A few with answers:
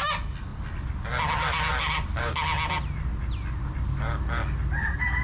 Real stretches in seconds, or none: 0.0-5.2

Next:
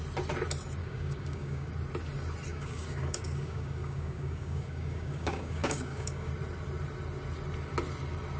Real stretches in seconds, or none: 0.0-0.8; 1.7-2.5; 6.3-8.4

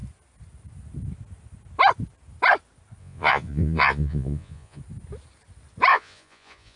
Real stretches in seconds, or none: 0.0-3.0; 4.8-5.9

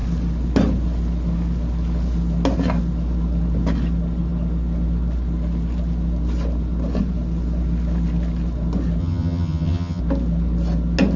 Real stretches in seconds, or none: 0.0-9.0; 10.0-11.2

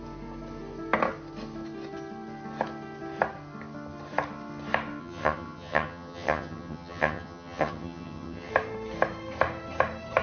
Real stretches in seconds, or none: 0.0-5.0; 8.5-10.2

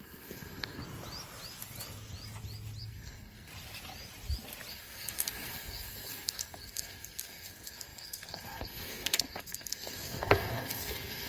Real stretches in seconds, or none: 0.8-2.8; 3.5-4.7

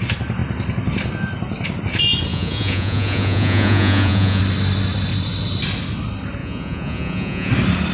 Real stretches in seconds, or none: 0.0-2.3; 4.4-6.4; 7.5-7.9